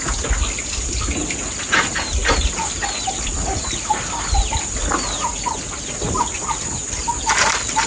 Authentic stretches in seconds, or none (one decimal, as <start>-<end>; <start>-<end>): 0.0-7.9